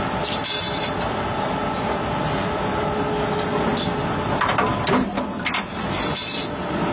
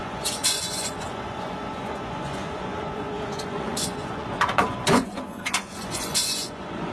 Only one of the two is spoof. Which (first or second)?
second